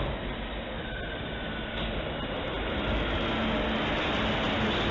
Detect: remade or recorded recorded